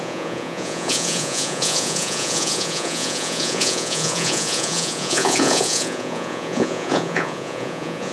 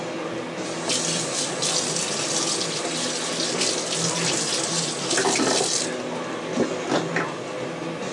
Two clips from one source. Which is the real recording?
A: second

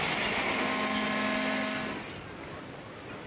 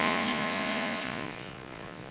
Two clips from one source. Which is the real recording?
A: first